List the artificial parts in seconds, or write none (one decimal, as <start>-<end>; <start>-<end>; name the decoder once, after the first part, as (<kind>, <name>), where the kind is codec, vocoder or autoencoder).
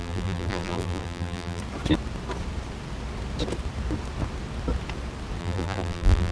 0.0-1.6 (vocoder, BigVGAN v2); 5.4-6.3